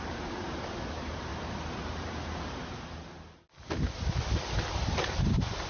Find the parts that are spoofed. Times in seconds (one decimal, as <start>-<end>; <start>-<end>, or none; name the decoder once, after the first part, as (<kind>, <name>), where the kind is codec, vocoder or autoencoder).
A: 0.0-1.3 (vocoder, BigVGAN v2); 4.7-5.7